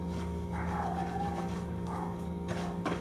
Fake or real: fake